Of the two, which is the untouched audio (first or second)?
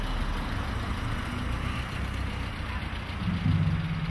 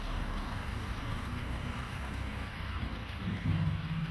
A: first